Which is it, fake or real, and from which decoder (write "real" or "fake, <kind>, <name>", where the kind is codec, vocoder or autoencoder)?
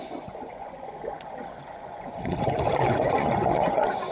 fake, vocoder, Vocos